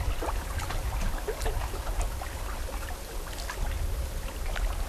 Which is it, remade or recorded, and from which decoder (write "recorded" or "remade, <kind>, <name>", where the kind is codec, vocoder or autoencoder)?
recorded